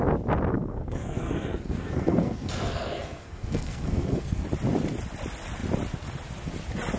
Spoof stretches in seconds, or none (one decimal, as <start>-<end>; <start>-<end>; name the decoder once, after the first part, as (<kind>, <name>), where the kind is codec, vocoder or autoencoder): 0.5-4.4 (codec, SNAC)